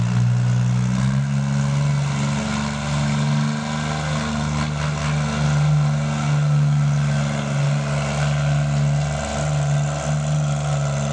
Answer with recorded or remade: recorded